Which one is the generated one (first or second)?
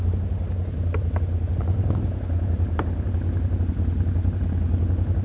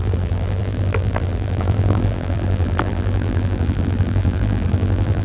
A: second